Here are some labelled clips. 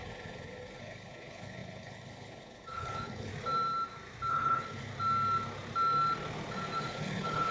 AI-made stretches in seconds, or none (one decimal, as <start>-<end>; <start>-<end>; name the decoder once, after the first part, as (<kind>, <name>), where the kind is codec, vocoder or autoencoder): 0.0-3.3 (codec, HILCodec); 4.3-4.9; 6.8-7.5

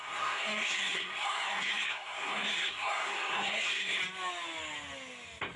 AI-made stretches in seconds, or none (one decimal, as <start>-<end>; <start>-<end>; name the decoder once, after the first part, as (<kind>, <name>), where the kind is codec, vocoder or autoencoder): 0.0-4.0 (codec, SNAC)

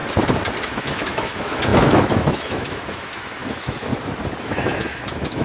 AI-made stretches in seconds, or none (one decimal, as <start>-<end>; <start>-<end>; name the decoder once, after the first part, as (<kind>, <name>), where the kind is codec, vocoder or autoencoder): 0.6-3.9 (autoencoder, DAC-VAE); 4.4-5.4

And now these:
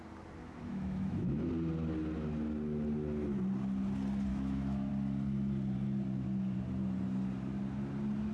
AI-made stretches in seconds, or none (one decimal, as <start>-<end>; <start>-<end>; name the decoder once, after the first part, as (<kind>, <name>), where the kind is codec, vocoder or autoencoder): 0.4-1.5 (autoencoder, DAC-VAE); 4.3-4.9

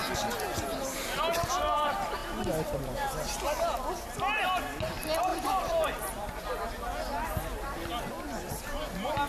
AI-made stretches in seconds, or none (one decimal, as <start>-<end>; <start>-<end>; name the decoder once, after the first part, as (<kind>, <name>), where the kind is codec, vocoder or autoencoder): 2.2-3.3 (vocoder, BigVGAN v2); 5.3-6.7